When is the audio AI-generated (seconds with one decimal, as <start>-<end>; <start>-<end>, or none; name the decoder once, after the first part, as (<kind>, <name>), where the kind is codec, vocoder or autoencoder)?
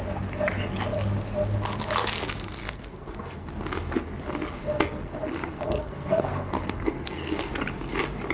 2.6-3.5 (codec, SNAC); 4.6-7.5